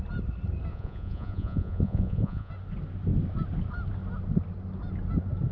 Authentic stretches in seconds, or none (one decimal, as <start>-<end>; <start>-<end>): 0.0-0.7; 2.5-5.5

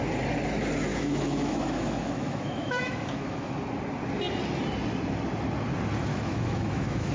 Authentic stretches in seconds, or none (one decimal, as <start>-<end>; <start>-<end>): 0.0-0.9; 3.5-6.1